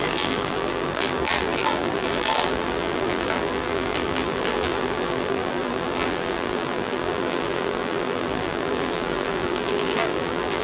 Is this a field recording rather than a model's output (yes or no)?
no